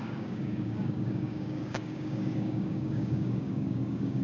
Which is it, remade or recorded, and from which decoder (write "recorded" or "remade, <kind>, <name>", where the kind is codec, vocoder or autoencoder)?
remade, codec, DAC